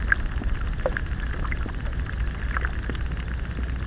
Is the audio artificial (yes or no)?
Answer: no